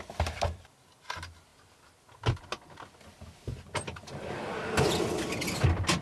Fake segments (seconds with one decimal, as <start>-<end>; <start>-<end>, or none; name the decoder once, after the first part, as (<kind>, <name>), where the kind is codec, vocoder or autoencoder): none